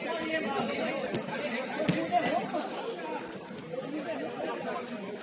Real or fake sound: real